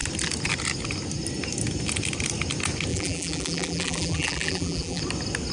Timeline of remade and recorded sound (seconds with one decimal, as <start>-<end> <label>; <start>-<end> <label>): 0.0-2.9 recorded; 2.9-5.0 remade; 5.0-5.5 recorded